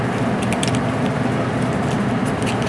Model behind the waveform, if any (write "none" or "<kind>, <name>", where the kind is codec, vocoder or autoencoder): none